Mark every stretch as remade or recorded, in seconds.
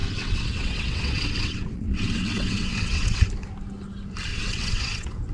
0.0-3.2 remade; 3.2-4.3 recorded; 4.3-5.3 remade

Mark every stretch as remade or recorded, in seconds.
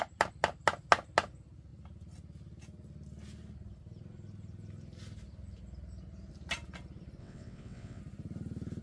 0.0-7.2 recorded; 7.2-8.0 remade; 8.0-8.8 recorded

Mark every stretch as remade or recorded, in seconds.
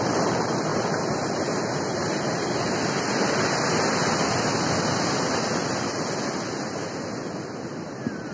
0.0-8.3 recorded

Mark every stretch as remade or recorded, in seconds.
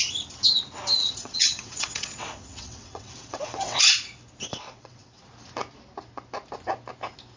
0.0-1.0 recorded; 1.0-3.8 remade; 3.8-4.5 recorded; 4.5-5.2 remade; 5.2-7.4 recorded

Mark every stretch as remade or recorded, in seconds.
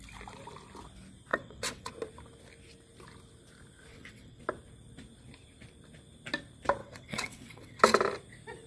0.0-1.3 recorded; 1.3-1.9 remade; 1.9-3.9 recorded; 3.9-4.4 remade; 4.4-6.8 recorded; 6.8-7.8 remade; 7.8-8.7 recorded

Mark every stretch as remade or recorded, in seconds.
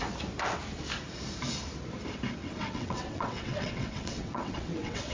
0.0-2.4 recorded; 2.4-5.1 remade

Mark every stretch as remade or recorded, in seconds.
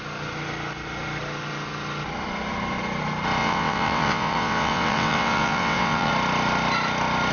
0.0-3.4 recorded; 3.4-6.1 remade; 6.1-7.3 recorded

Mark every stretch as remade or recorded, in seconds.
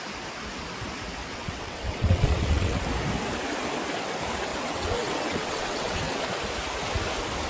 0.0-1.3 recorded; 1.3-2.8 remade; 2.8-4.5 recorded; 4.5-6.2 remade; 6.2-7.5 recorded